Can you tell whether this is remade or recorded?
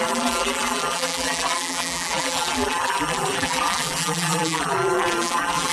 remade